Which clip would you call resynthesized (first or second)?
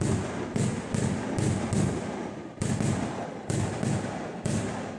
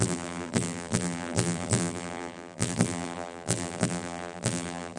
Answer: second